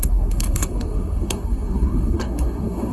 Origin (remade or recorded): remade